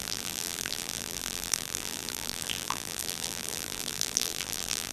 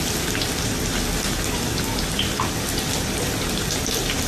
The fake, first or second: first